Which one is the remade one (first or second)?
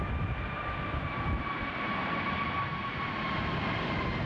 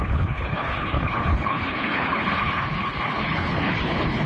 second